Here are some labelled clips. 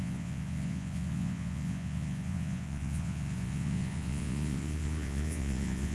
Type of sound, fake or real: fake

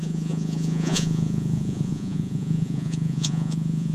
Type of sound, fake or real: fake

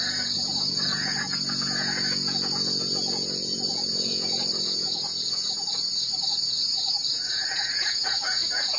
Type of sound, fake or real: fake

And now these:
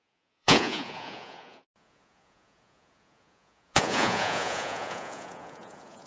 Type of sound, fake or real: fake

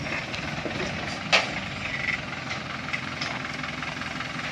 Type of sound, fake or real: real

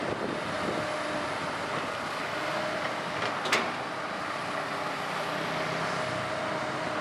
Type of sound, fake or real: real